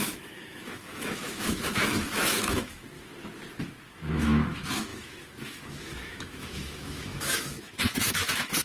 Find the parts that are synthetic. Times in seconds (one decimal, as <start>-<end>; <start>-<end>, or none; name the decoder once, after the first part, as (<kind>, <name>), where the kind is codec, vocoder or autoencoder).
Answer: 0.0-3.1 (autoencoder, DAC-VAE); 3.6-8.6